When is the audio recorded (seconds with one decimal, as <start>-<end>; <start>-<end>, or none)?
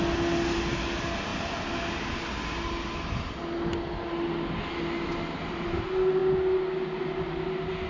0.0-7.9